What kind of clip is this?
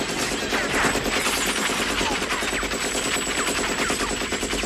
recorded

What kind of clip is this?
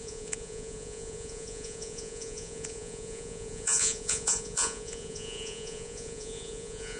remade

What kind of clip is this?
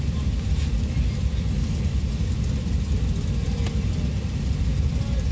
recorded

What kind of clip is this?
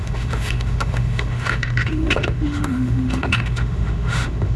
remade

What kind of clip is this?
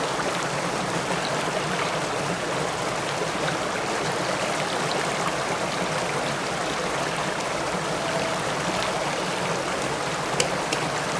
recorded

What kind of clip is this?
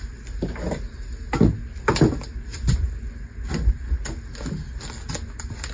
recorded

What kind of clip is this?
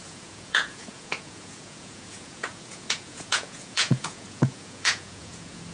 remade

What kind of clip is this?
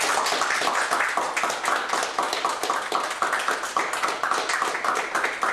recorded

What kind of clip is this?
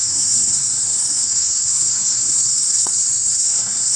remade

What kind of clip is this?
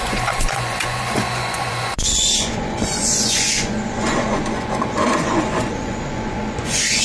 remade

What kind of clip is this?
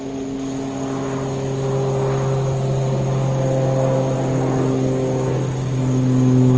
recorded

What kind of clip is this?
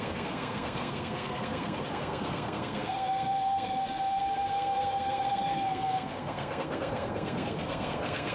remade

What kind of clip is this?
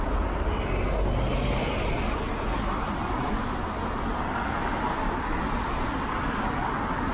recorded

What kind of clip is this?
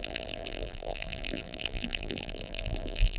remade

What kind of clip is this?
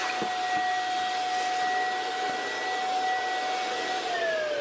recorded